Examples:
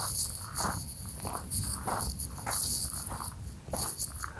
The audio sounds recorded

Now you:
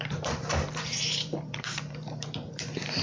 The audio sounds remade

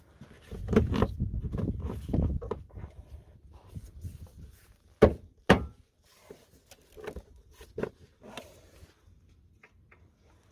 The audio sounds recorded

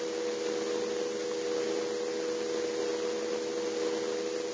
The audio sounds recorded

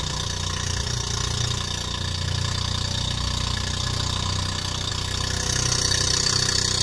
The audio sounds recorded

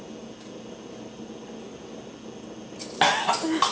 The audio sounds recorded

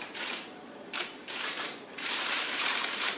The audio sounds remade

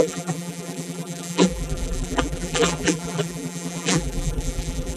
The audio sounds remade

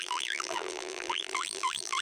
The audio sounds remade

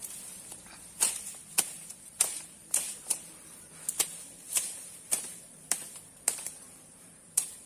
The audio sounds remade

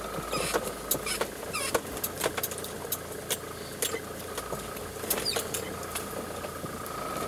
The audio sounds recorded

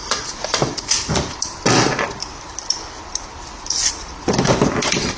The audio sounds remade